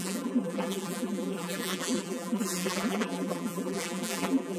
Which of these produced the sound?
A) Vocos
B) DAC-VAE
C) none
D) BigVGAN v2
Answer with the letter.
D